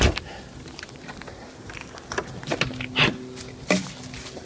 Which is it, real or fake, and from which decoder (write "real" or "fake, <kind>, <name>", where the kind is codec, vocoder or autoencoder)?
real